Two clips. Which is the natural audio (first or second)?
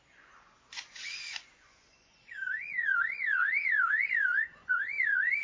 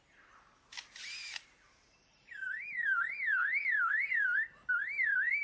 second